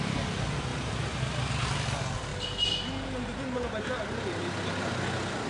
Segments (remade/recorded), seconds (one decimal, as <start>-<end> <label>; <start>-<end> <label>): 0.0-0.7 recorded; 0.7-1.2 remade; 1.2-5.5 recorded